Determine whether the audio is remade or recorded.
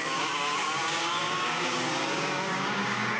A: remade